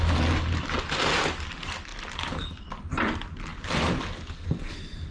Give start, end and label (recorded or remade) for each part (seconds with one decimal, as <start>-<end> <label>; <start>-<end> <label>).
0.0-1.9 recorded; 1.9-2.7 remade; 2.7-5.1 recorded